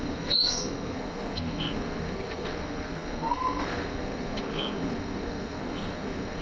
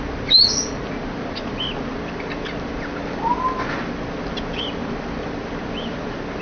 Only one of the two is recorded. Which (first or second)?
second